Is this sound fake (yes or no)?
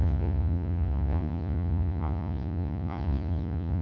yes